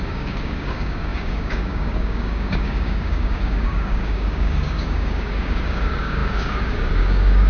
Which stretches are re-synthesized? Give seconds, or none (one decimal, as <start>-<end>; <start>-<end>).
0.0-7.5